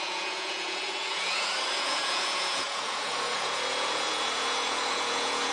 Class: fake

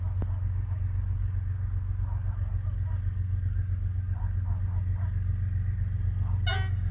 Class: real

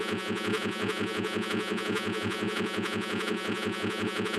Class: fake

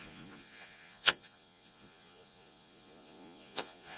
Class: fake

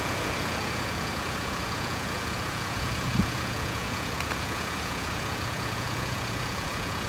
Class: fake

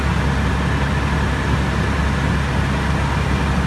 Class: real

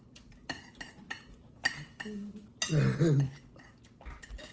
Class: real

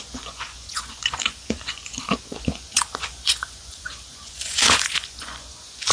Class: fake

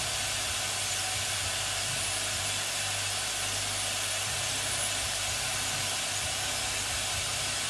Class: real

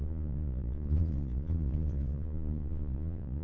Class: fake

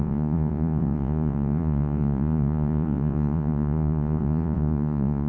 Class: fake